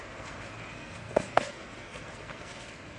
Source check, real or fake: fake